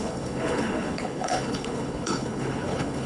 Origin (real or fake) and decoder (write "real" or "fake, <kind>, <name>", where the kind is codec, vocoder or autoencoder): fake, codec, HILCodec